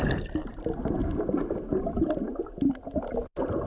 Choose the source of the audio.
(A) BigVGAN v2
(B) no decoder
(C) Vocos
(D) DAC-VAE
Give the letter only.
B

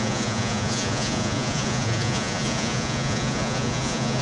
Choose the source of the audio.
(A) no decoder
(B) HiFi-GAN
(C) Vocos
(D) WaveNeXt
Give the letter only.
C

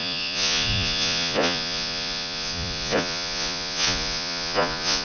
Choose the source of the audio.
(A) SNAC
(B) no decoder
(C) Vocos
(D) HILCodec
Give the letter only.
C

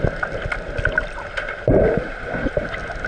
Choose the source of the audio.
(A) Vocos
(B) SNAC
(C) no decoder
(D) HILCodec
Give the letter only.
C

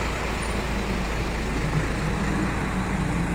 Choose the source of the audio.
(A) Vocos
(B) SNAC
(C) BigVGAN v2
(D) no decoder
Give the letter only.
D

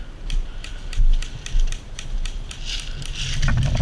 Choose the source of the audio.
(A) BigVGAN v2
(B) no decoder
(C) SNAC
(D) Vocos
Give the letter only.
B